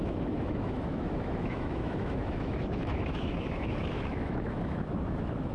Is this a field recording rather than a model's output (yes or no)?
no